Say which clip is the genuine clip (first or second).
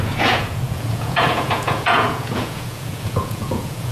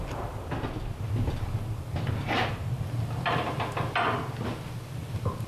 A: second